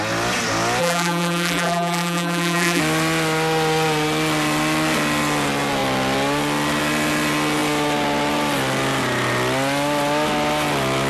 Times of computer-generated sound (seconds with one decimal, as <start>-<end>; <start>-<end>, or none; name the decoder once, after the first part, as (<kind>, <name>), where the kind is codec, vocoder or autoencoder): 0.8-2.8 (vocoder, BigVGAN v2)